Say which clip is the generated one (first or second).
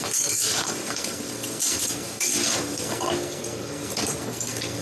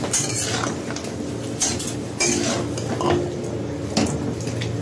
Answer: first